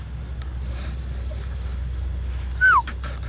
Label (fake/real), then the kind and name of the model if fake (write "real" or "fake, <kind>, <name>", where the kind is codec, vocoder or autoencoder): real